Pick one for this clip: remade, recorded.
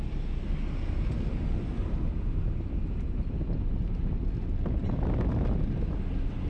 recorded